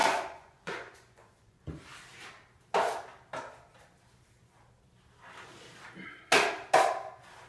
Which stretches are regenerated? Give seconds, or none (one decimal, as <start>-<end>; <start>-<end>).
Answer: 0.0-1.7